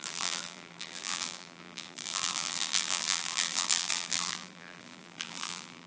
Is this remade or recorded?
remade